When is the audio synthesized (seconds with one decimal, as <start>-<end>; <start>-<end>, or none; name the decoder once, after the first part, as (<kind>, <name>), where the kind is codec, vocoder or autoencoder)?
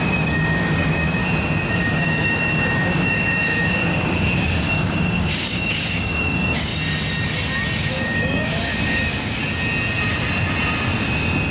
0.0-1.2 (codec, DAC); 1.7-6.7; 7.9-9.4